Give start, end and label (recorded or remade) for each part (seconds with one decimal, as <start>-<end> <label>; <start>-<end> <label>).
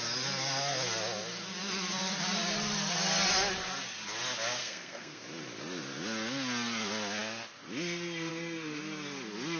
0.0-4.6 recorded; 4.6-5.2 remade; 5.2-9.6 recorded